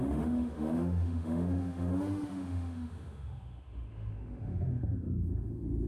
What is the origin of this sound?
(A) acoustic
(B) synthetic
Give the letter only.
B